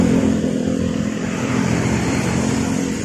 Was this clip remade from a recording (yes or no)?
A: yes